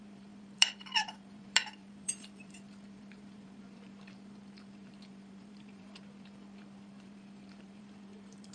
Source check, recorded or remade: remade